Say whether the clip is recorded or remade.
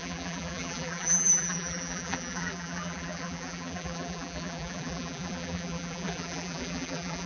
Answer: remade